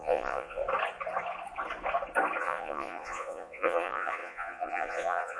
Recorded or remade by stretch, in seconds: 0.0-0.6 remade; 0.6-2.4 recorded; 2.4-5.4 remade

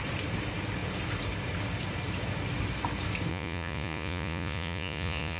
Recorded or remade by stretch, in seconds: 0.0-3.3 recorded; 3.3-5.4 remade

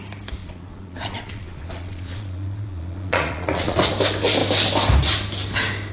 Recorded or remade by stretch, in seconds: 0.0-0.4 recorded; 0.4-3.9 remade; 3.9-5.9 recorded